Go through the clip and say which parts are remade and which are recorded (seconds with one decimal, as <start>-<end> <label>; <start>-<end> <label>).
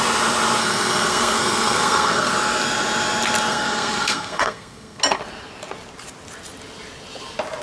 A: 0.0-0.6 recorded; 0.6-2.3 remade; 2.3-3.5 recorded; 3.5-5.0 remade; 5.0-7.6 recorded